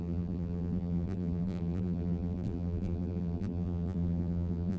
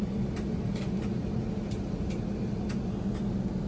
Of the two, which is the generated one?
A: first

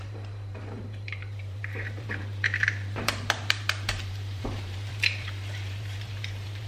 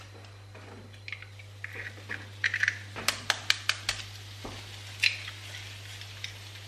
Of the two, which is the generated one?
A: first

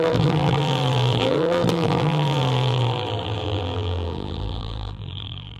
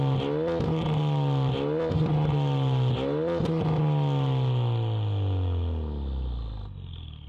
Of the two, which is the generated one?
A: first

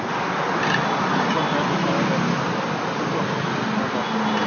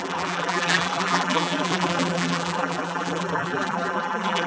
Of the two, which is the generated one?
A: second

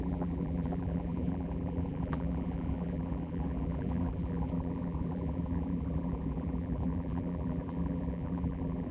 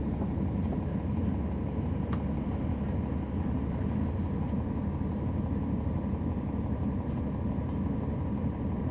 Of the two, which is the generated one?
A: first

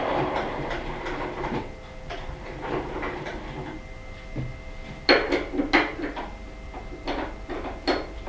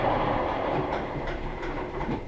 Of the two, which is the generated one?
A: second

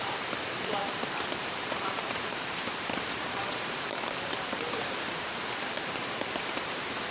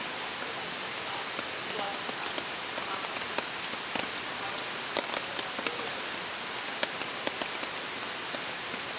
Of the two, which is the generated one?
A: first